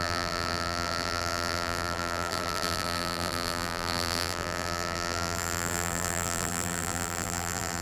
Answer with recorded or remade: remade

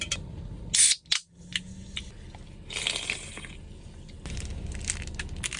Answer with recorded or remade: recorded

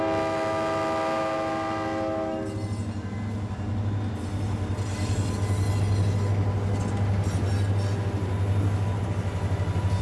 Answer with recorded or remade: recorded